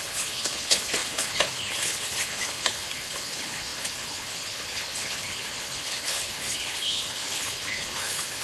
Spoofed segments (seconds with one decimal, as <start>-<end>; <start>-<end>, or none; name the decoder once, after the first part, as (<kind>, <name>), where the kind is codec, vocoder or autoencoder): 0.0-8.4 (codec, HILCodec)